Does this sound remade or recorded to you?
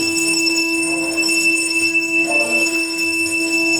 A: remade